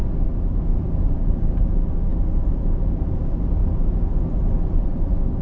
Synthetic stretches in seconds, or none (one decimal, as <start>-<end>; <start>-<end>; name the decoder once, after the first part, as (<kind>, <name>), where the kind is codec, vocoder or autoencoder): 0.8-3.6 (vocoder, BigVGAN v2); 4.7-5.4